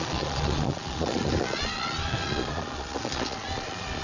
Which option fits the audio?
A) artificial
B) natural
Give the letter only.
A